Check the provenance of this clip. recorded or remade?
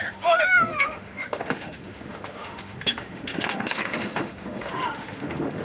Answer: remade